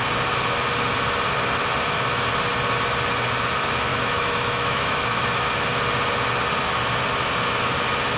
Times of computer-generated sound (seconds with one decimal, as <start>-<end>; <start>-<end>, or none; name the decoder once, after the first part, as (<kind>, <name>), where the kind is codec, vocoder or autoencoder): 3.9-5.5 (autoencoder, DAC-VAE)